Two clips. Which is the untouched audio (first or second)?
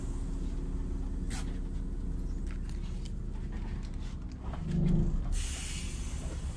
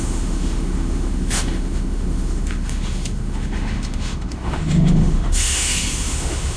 first